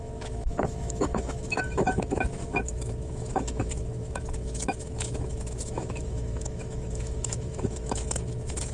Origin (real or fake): fake